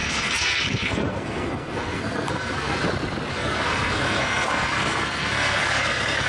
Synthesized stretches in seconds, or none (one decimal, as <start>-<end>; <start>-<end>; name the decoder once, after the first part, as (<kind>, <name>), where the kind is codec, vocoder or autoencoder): 0.0-2.8 (codec, SNAC); 3.3-6.3